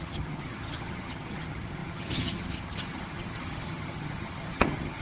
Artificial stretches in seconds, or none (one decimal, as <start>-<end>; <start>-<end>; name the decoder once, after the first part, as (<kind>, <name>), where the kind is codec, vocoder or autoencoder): 0.0-5.0 (vocoder, HiFi-GAN)